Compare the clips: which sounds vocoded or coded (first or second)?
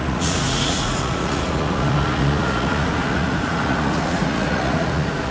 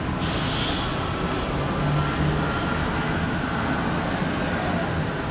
first